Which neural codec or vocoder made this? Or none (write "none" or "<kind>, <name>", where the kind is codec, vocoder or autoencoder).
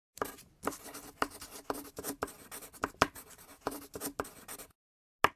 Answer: none